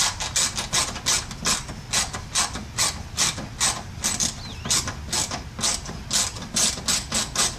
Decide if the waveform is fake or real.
real